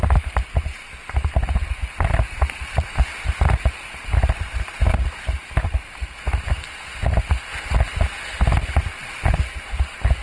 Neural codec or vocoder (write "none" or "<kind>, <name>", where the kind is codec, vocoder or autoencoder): none